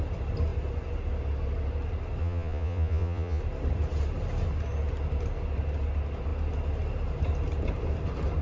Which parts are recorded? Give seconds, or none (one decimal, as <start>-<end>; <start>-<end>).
0.0-2.2; 3.4-8.4